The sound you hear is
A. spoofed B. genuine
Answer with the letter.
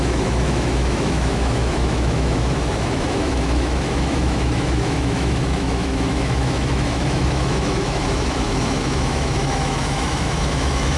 A